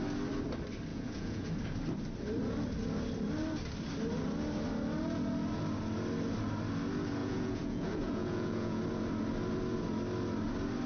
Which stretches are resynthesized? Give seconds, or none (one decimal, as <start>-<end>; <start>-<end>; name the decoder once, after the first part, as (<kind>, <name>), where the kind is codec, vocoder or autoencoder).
0.9-1.5 (vocoder, Vocos); 7.2-8.8